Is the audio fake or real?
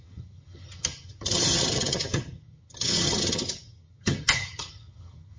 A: fake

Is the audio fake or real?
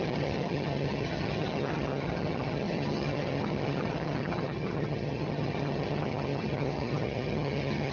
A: fake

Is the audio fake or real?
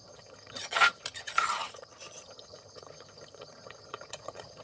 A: fake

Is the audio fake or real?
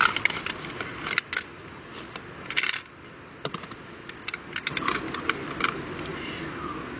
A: real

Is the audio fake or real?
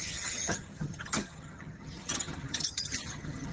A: fake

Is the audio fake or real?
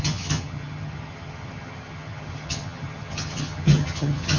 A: fake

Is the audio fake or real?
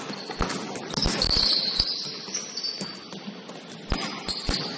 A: real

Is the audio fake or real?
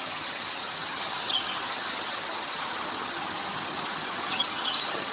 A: fake